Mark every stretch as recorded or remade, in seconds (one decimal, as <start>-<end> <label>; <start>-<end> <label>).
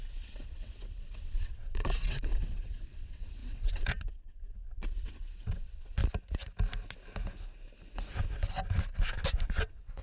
0.0-6.0 remade; 6.0-9.5 recorded; 9.5-10.0 remade